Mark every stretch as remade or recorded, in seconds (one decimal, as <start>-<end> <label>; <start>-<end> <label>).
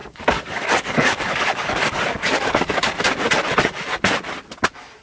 0.0-3.0 remade; 3.0-5.0 recorded